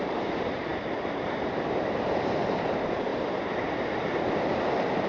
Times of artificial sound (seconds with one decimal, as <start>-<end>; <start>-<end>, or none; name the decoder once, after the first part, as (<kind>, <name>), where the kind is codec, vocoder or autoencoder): 0.0-5.1 (vocoder, BigVGAN v2)